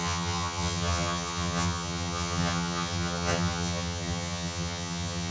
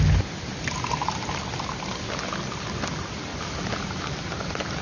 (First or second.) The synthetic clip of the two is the first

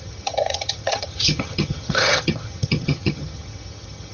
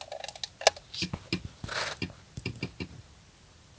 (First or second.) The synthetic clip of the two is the first